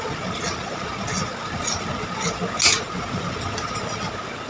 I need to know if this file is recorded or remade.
recorded